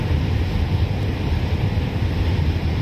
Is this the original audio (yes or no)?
yes